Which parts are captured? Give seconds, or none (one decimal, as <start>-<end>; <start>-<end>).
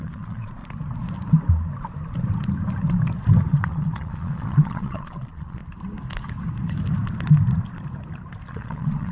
0.6-3.5; 5.6-8.5